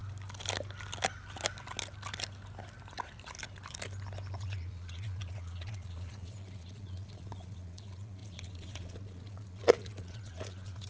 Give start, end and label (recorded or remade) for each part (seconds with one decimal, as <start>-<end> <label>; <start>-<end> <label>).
0.0-4.3 recorded; 4.3-10.9 remade